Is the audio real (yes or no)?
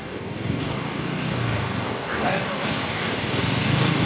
no